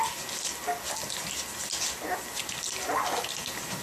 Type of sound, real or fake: real